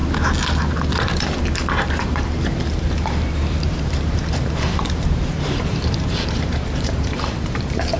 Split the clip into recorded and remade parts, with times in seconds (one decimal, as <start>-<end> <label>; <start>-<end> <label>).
0.0-2.0 recorded; 2.0-8.0 remade